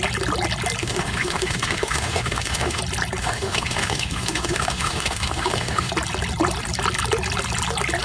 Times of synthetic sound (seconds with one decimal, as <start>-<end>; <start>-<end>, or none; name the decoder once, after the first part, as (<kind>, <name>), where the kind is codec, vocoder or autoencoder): 0.8-2.8 (autoencoder, DAC-VAE); 3.2-5.9